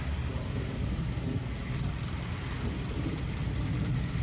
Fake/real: real